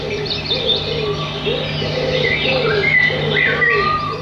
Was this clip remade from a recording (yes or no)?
no